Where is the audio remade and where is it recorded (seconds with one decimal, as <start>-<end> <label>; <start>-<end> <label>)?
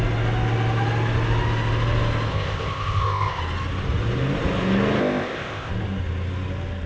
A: 0.0-2.3 recorded; 2.3-3.4 remade; 3.4-5.0 recorded; 5.0-5.7 remade; 5.7-6.9 recorded